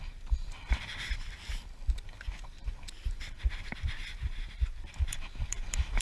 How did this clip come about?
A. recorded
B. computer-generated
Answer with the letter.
B